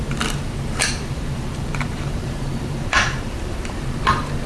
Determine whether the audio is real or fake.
fake